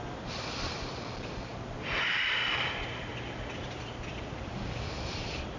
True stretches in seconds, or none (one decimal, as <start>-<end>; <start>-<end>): 0.0-1.5; 2.5-3.1